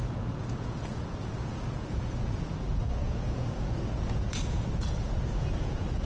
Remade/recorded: remade